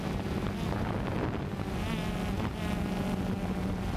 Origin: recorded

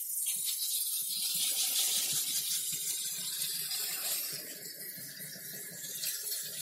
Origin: remade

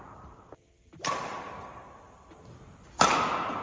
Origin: recorded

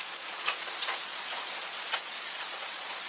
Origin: remade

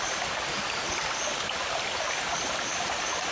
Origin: recorded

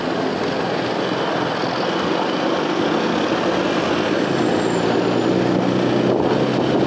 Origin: recorded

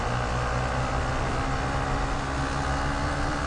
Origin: recorded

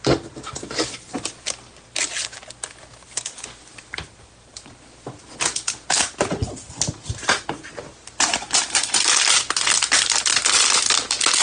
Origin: recorded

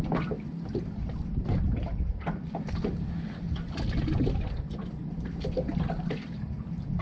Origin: recorded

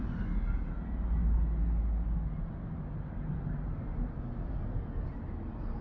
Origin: recorded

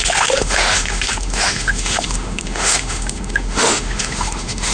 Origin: remade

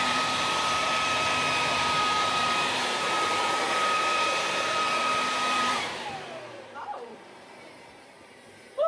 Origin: remade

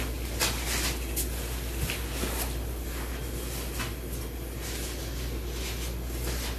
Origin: recorded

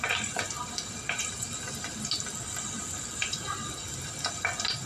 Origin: recorded